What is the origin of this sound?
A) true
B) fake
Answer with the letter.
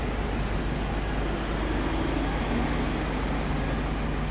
A